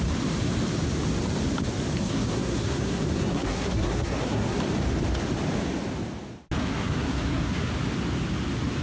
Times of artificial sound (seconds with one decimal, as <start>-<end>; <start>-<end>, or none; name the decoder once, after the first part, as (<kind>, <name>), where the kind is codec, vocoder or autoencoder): 2.0-4.6 (codec, SNAC); 6.6-7.7